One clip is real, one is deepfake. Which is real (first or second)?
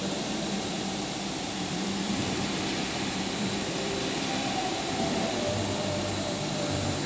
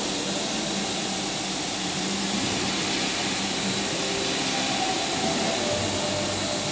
second